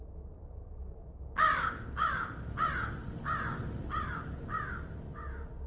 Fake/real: real